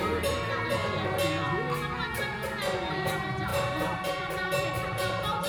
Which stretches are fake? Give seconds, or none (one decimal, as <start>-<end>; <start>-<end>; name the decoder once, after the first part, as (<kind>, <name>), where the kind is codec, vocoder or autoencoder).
0.0-0.8 (vocoder, BigVGAN v2); 2.9-5.5